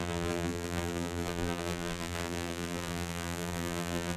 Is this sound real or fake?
fake